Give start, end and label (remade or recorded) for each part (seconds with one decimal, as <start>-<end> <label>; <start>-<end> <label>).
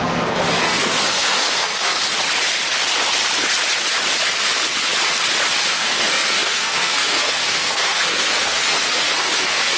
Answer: 0.0-2.0 remade; 2.0-5.6 recorded; 5.6-9.8 remade